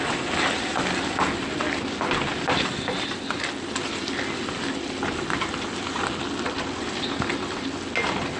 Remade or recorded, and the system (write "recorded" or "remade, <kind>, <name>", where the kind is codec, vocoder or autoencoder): recorded